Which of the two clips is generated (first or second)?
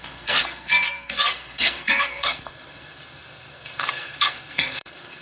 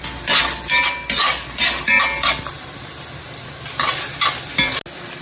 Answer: first